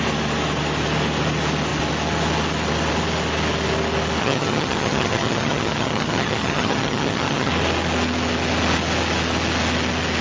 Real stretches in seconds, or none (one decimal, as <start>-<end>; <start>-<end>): 0.0-4.2; 7.5-10.2